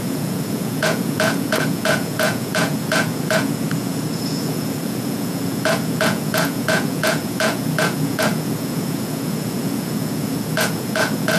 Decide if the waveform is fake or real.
fake